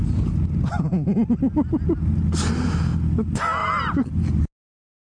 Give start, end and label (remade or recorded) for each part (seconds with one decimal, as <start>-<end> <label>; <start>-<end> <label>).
0.0-3.6 recorded; 3.6-4.2 remade; 4.2-5.2 recorded